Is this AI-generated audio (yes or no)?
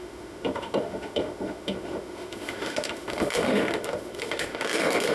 yes